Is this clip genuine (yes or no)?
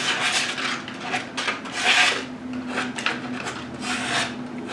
yes